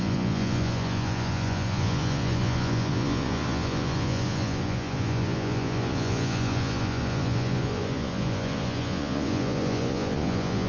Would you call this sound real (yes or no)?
no